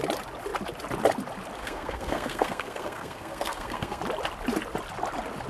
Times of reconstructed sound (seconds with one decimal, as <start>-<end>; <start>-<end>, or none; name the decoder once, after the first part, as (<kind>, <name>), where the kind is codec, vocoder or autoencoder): 1.6-4.0 (codec, SNAC)